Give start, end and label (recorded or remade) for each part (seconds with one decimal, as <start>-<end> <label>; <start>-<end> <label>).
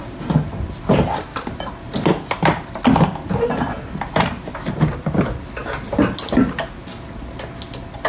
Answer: 0.0-8.1 recorded